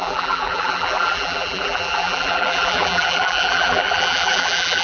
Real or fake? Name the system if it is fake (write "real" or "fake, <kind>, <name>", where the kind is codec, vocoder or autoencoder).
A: fake, vocoder, BigVGAN v2